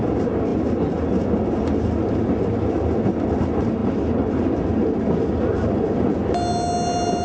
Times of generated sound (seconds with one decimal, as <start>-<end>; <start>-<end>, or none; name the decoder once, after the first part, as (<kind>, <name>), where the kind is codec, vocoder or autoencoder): none